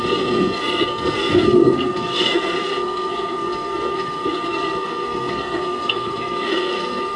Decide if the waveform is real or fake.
fake